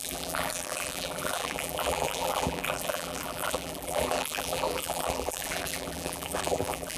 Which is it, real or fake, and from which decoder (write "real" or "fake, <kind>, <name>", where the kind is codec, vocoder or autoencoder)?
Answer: fake, vocoder, BigVGAN v2